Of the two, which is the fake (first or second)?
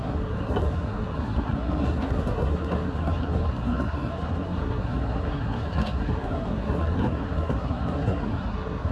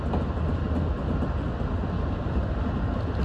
first